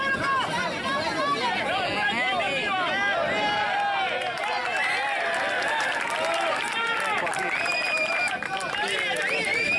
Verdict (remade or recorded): recorded